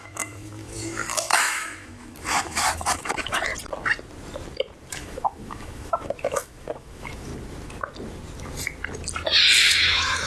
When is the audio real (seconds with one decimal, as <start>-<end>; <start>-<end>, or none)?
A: 3.5-4.9; 7.3-9.6